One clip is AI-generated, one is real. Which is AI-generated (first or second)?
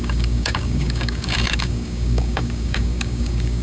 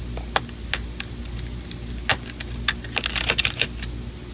first